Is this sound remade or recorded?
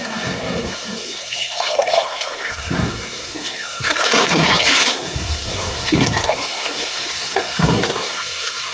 remade